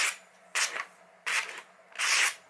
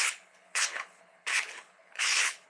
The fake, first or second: second